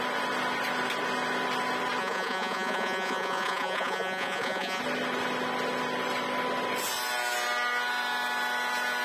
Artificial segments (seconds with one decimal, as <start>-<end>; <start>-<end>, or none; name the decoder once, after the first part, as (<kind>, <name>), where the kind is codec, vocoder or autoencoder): 2.0-4.8 (vocoder, Vocos)